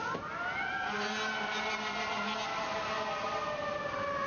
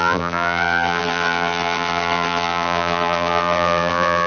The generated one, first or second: second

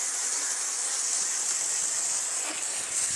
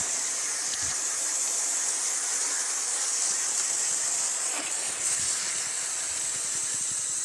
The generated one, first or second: second